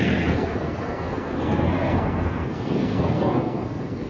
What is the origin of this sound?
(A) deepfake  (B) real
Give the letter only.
A